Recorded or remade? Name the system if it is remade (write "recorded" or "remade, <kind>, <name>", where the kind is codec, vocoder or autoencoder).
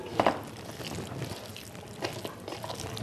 recorded